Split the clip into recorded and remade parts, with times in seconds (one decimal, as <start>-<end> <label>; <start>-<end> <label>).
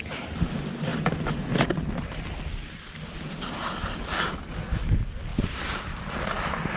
0.0-6.8 recorded